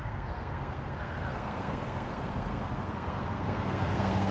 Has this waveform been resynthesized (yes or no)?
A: yes